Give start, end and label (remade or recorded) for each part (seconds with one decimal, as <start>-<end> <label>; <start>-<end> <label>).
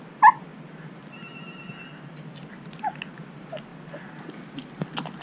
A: 0.0-0.5 recorded; 0.5-1.7 remade; 1.7-3.7 recorded; 3.7-4.3 remade; 4.3-5.2 recorded